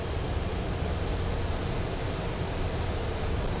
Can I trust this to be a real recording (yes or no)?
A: yes